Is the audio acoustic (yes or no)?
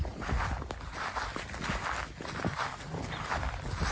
yes